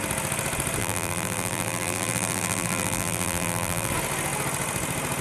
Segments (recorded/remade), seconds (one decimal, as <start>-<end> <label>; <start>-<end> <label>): 0.0-0.8 recorded; 0.8-3.9 remade; 3.9-5.2 recorded